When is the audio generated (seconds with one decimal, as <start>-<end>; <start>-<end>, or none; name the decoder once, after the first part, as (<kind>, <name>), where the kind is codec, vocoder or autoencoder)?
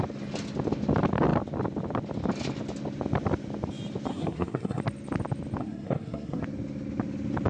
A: 4.1-4.8 (codec, SNAC); 5.6-6.4